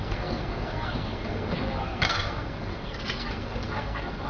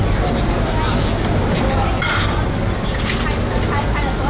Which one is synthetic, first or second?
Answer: first